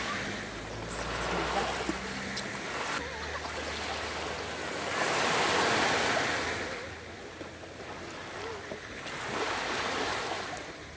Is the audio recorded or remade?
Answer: recorded